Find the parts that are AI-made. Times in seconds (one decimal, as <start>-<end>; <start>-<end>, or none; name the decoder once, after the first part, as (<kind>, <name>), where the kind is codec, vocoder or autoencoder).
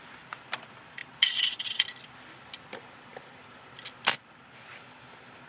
1.0-1.8 (vocoder, Vocos)